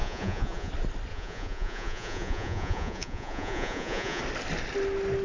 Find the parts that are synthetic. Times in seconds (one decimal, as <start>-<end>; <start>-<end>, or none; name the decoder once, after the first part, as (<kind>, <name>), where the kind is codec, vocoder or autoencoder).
0.0-0.7 (vocoder, Vocos); 1.1-4.2